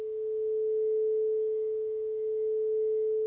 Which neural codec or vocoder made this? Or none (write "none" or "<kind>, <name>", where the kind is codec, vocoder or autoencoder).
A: none